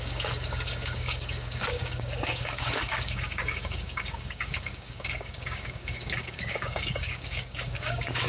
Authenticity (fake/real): fake